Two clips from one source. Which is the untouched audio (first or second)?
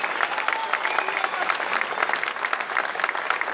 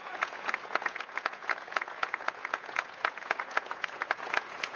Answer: first